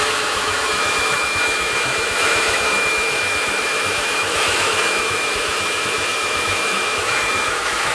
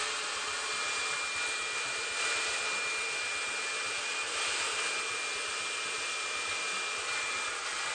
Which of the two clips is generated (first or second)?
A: first